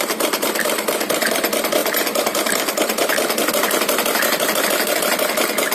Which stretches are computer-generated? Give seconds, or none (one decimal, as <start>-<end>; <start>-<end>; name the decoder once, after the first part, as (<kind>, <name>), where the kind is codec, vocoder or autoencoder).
none

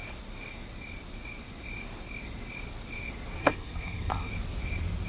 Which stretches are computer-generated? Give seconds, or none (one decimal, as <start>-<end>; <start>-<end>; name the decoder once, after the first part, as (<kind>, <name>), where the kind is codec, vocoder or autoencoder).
3.4-4.3 (codec, SNAC)

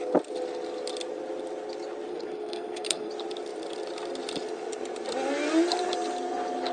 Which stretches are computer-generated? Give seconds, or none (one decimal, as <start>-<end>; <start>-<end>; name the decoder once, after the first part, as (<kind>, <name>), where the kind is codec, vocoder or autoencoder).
2.1-3.1 (codec, SNAC)

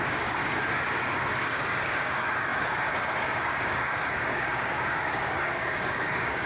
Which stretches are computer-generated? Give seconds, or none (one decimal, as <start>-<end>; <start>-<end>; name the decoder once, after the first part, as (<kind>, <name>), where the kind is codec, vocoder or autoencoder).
0.0-0.4 (codec, DAC); 0.9-6.5

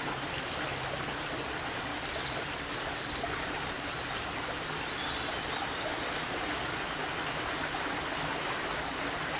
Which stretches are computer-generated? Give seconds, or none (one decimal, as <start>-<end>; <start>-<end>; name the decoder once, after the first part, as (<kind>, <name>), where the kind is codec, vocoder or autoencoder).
none

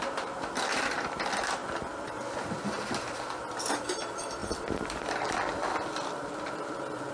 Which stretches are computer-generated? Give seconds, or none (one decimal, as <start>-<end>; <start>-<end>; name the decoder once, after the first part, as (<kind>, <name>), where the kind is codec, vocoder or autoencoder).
none

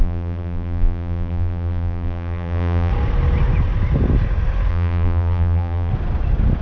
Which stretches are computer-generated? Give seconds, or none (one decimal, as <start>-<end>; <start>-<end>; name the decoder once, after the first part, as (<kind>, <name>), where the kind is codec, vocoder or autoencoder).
0.0-2.9 (vocoder, BigVGAN v2); 4.7-5.9

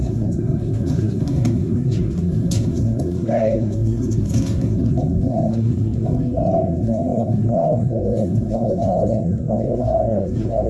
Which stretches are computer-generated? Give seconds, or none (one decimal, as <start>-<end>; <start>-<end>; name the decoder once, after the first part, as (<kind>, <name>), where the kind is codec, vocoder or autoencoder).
0.0-10.7 (codec, SNAC)